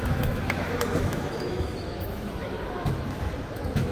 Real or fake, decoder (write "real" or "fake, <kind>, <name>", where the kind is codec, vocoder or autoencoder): fake, autoencoder, DAC-VAE